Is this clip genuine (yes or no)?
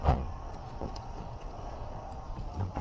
no